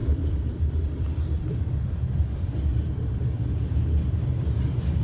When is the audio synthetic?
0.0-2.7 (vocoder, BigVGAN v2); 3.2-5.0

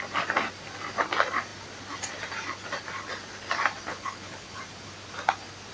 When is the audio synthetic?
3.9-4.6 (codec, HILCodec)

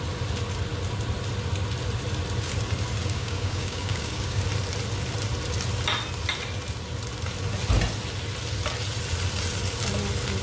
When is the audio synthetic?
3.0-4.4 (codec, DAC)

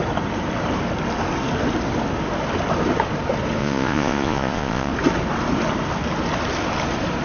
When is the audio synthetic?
3.6-4.9 (vocoder, Vocos)